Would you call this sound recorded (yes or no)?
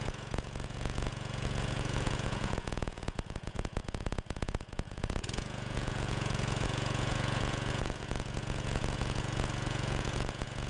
no